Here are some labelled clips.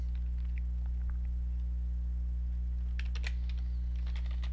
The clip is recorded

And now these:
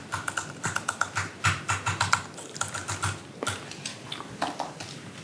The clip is recorded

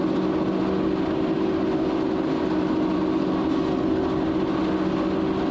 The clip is recorded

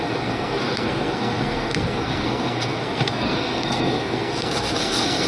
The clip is remade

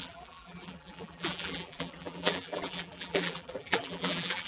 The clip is remade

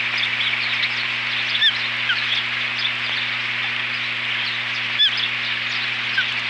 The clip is recorded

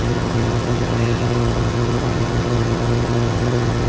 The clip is remade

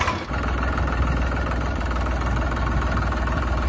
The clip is recorded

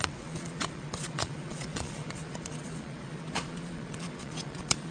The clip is remade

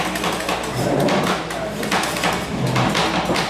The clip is recorded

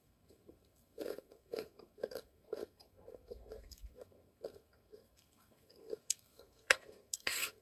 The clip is remade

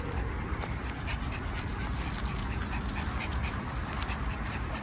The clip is remade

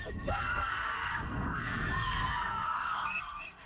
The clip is remade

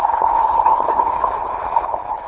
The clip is remade